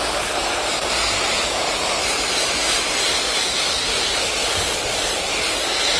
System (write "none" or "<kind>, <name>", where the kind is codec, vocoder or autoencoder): vocoder, BigVGAN v2